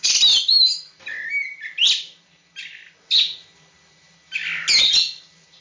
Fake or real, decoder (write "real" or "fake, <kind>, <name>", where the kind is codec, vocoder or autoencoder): real